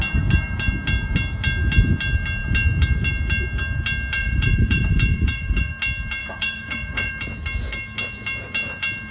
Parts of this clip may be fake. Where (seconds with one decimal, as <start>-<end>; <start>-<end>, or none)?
4.2-5.7; 6.2-7.1